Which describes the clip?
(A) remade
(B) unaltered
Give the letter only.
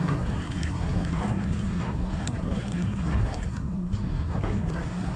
A